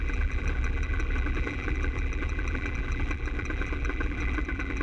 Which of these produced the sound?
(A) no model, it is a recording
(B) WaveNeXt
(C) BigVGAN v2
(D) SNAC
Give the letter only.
C